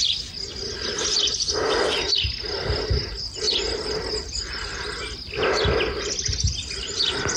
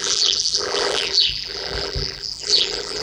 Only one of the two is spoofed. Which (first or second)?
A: second